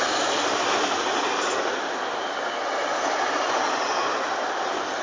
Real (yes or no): yes